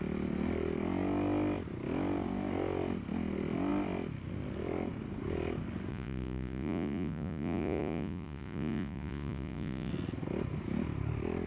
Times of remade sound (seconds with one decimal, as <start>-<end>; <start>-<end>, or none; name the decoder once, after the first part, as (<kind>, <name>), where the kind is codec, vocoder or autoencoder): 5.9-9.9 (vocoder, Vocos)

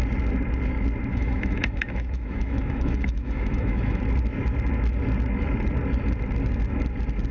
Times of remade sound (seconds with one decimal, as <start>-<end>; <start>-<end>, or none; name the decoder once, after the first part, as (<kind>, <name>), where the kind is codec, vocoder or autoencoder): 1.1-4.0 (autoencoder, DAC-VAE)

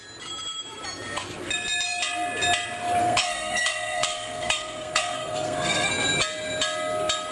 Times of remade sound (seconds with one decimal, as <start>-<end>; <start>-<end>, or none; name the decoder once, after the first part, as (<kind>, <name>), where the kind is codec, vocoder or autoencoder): 3.0-5.9 (codec, SNAC)